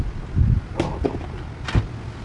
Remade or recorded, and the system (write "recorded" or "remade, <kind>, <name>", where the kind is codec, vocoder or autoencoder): recorded